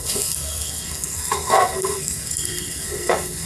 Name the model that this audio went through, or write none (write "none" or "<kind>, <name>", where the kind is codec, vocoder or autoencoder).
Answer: codec, SNAC